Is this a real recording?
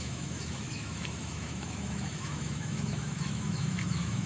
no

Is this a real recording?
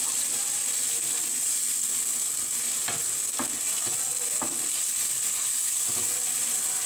yes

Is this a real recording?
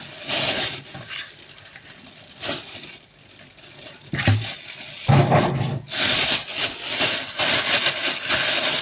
yes